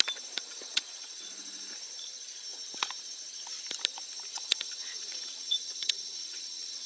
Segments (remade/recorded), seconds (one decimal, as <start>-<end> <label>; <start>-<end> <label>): 0.0-0.4 recorded; 0.4-1.3 remade; 1.3-4.3 recorded; 4.3-6.9 remade